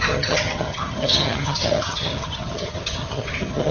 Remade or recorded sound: remade